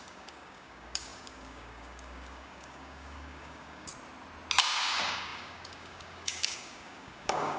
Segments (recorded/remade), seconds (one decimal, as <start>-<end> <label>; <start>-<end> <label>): 0.0-3.9 remade; 3.9-4.6 recorded; 4.6-7.6 remade